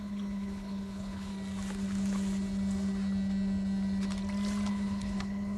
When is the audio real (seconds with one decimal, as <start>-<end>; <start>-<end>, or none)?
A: 1.3-4.7